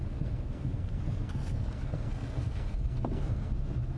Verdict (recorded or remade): remade